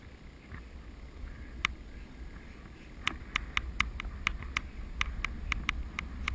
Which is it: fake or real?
real